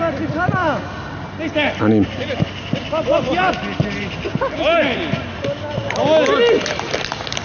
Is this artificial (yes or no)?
no